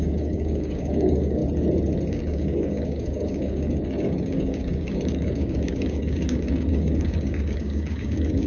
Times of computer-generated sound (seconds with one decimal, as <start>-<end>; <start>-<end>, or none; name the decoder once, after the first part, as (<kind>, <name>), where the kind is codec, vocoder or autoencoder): 0.0-1.4 (codec, DAC); 2.1-8.5